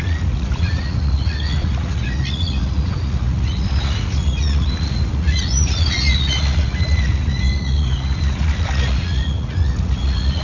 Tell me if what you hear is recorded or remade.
remade